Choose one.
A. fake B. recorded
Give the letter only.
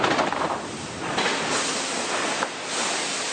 B